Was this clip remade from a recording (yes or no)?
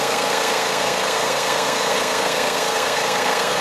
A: yes